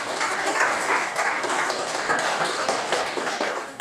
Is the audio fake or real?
fake